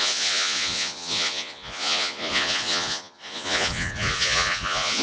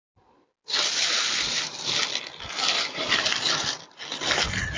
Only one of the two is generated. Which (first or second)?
first